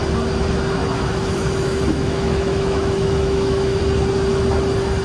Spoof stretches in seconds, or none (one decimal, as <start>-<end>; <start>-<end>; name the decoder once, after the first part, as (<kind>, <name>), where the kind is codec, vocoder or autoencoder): 0.8-3.8 (autoencoder, DAC-VAE)

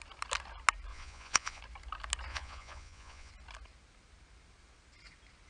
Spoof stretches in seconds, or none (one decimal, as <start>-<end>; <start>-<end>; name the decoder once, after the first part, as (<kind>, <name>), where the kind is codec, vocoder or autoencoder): 0.9-1.6 (vocoder, Vocos); 2.3-3.3

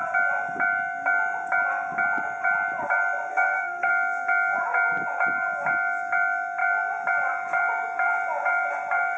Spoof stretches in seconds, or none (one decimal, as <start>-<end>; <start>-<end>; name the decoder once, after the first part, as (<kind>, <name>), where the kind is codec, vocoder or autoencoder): 3.3-3.9 (codec, SNAC)

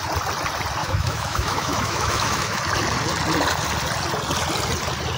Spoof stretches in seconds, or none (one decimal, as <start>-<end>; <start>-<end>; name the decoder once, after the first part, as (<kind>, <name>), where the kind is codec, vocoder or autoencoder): 0.8-2.6 (autoencoder, DAC-VAE)

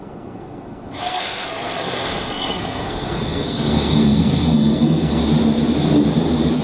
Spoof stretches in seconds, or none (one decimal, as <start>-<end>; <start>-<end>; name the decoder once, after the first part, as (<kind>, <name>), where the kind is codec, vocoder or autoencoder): 0.0-5.2 (codec, SNAC)

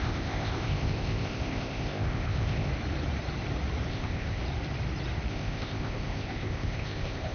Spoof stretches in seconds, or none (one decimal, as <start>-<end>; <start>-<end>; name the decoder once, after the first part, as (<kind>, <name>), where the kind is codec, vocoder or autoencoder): 0.0-2.7 (codec, ZipCodec); 3.9-4.4; 5.3-7.3

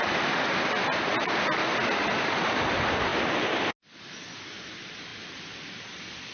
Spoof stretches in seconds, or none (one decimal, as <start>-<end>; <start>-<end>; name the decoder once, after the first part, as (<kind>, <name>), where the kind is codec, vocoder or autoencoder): none